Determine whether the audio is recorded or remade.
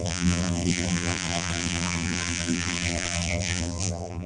remade